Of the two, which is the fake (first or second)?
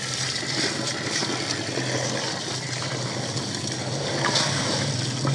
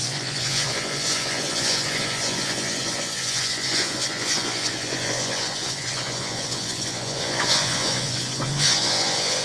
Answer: second